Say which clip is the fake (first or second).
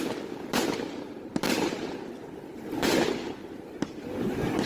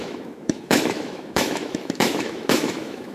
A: second